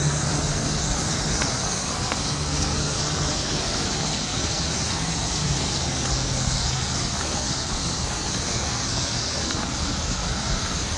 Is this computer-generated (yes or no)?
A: yes